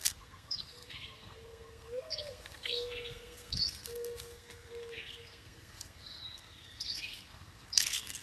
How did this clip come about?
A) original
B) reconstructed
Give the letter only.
B